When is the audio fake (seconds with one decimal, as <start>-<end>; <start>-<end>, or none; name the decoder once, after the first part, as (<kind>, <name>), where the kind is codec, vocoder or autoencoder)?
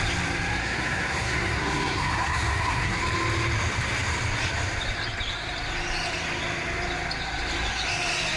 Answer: 0.6-3.0 (codec, SNAC)